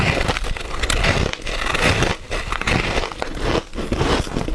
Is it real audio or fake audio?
real